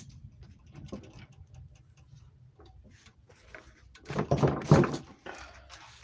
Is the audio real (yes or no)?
yes